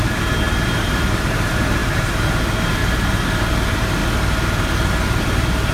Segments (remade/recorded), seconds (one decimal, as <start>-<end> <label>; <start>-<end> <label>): 0.0-2.8 remade; 2.8-3.4 recorded; 3.4-4.0 remade; 4.0-5.2 recorded; 5.2-5.7 remade